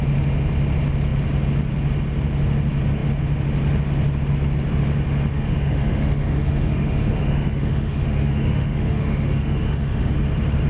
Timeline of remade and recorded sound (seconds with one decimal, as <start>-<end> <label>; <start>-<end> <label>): 0.0-5.3 recorded; 5.3-10.1 remade; 10.1-10.7 recorded